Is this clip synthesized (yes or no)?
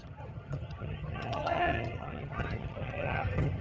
yes